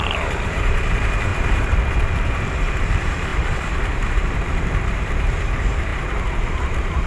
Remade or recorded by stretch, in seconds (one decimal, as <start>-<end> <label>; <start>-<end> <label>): 0.0-7.1 remade